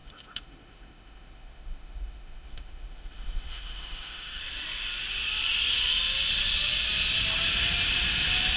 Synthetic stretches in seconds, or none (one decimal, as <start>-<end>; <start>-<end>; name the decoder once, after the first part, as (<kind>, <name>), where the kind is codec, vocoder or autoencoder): 0.0-4.4 (autoencoder, DAC-VAE)